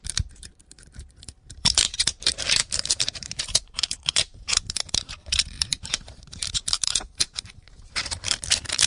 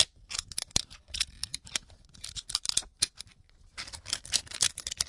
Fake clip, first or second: first